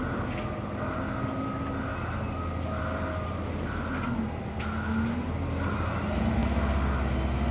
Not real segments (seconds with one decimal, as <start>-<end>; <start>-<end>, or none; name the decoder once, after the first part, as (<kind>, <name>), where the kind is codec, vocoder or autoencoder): none